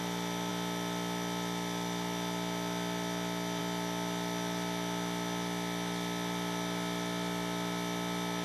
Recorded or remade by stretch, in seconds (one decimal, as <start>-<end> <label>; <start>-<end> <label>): 0.0-8.4 recorded

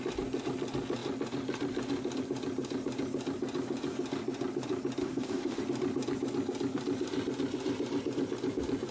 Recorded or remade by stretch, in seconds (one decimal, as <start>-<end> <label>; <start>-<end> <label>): 0.0-5.0 recorded; 5.0-5.6 remade; 5.6-8.9 recorded

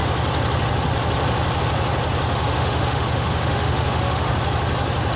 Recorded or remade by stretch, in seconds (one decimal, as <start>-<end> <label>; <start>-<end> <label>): 0.0-2.3 recorded; 2.3-4.3 remade; 4.3-5.2 recorded

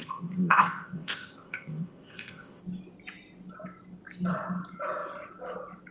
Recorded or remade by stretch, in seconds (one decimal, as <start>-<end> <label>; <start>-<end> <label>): 0.0-2.6 remade; 2.6-5.9 recorded

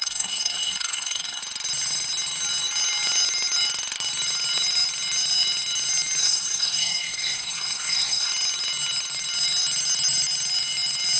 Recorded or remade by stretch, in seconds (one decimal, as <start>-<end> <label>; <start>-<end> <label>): 0.0-1.4 remade; 1.4-6.2 recorded; 6.2-8.3 remade; 8.3-11.2 recorded